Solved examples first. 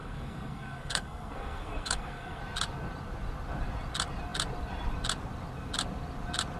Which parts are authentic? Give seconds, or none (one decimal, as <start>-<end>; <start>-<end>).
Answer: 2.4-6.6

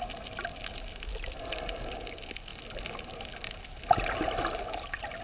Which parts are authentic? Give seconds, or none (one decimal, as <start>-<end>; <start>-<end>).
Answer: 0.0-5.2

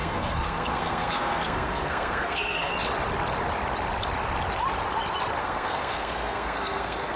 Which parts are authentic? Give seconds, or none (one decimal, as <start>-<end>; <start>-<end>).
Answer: 2.7-5.4

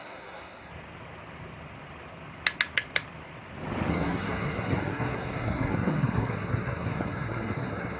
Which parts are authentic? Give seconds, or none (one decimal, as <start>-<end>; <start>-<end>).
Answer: 0.7-3.9